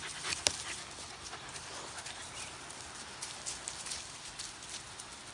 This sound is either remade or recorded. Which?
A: recorded